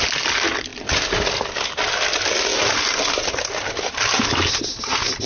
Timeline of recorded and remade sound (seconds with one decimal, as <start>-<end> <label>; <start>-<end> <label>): 0.0-2.5 recorded; 2.5-3.3 remade; 3.3-5.3 recorded